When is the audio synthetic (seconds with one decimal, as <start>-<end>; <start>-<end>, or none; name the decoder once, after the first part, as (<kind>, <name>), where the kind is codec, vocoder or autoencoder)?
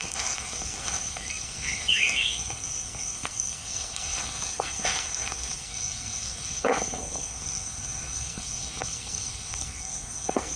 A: 0.0-10.6 (codec, SNAC)